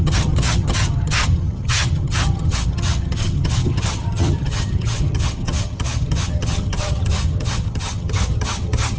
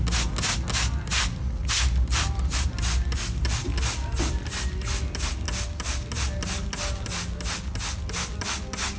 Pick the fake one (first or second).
first